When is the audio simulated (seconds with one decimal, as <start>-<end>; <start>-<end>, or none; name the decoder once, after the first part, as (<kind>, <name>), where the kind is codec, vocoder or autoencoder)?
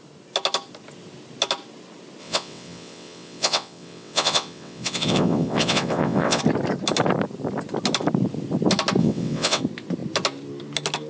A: 2.2-6.4 (vocoder, WaveNeXt); 9.0-9.6